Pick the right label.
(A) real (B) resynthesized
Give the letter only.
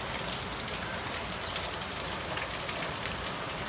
A